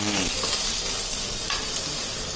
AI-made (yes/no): no